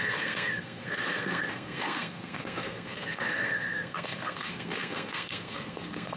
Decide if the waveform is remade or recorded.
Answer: remade